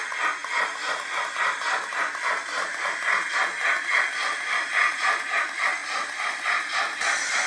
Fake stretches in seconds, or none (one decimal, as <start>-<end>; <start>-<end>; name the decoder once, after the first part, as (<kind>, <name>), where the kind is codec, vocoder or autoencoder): none